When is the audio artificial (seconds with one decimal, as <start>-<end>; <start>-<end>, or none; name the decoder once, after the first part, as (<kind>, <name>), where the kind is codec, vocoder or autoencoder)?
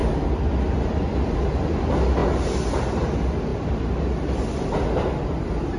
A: 0.0-1.4 (vocoder, BigVGAN v2); 3.5-5.2